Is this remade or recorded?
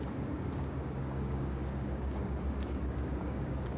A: remade